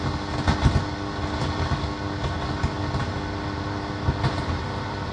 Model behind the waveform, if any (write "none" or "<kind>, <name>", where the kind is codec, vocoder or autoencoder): none